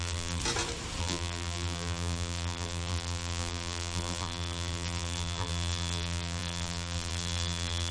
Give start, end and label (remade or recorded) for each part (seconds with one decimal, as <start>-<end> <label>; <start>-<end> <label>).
0.0-0.4 remade; 0.4-1.0 recorded; 1.0-7.9 remade